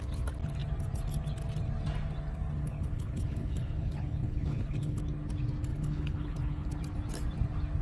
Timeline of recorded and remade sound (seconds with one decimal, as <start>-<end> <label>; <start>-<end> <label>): 0.0-2.6 recorded; 2.6-5.0 remade; 5.0-5.7 recorded; 5.7-6.8 remade; 6.8-7.8 recorded